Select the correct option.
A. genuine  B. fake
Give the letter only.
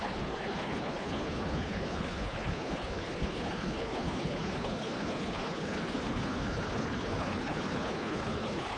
B